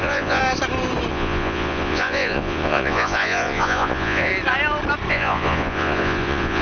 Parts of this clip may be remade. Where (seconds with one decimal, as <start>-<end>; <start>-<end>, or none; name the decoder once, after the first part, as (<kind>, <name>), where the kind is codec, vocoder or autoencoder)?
0.0-0.4 (vocoder, Vocos); 1.1-4.3; 5.1-6.6